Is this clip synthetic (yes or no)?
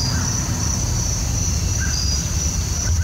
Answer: no